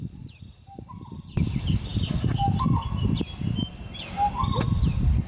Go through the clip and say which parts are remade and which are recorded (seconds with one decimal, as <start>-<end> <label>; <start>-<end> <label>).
0.0-5.3 recorded